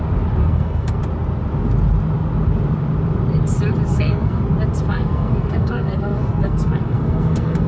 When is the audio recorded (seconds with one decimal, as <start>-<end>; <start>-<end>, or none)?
0.0-0.4; 1.0-3.9; 4.4-4.9

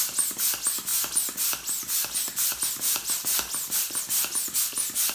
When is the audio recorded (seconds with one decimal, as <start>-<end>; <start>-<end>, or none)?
0.0-5.1

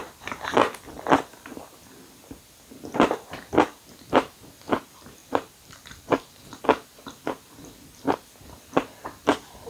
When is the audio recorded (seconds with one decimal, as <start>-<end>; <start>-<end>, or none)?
0.0-5.2; 6.6-9.7